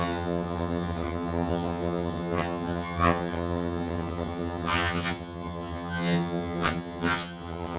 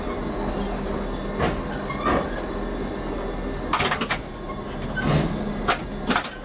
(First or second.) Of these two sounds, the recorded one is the second